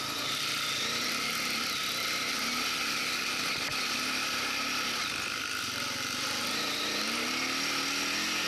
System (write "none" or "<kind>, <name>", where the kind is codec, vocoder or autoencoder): none